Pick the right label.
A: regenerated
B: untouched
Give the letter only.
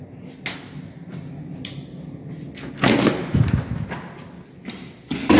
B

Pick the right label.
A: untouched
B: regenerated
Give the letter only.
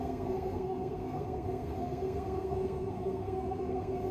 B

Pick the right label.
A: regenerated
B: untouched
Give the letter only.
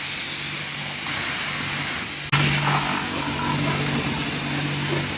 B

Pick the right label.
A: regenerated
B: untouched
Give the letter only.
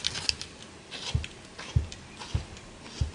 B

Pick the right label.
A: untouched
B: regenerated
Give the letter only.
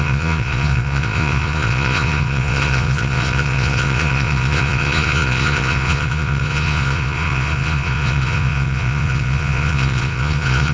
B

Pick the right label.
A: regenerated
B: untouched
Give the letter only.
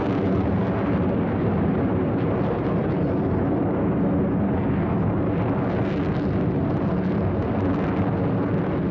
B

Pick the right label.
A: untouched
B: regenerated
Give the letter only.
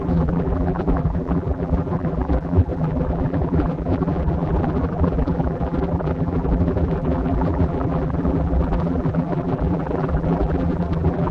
B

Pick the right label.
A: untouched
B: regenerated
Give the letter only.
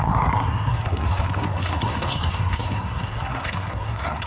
B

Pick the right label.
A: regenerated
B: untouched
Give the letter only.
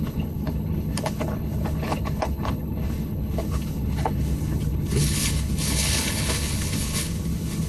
A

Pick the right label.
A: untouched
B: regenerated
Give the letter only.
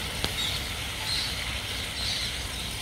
A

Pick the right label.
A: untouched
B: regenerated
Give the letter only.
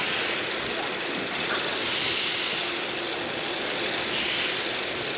A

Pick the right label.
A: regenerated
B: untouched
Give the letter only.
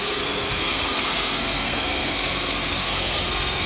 A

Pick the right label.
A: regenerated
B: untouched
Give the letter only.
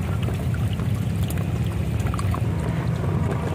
B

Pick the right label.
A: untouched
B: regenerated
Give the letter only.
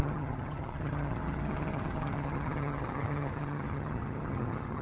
B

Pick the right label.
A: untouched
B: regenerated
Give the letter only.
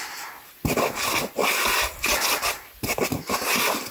A